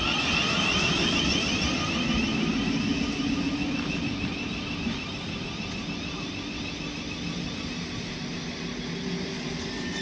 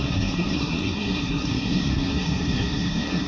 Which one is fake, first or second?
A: second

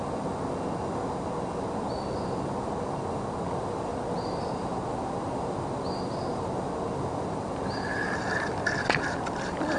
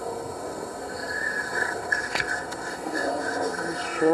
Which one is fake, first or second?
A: second